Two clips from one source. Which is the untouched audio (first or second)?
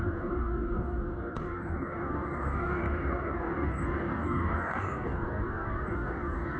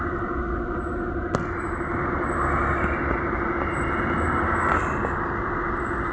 second